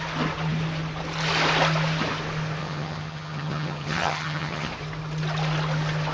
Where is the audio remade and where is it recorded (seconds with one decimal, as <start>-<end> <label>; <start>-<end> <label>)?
0.0-2.6 recorded; 2.6-4.7 remade; 4.7-6.1 recorded